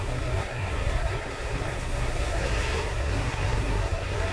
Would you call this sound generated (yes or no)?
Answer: yes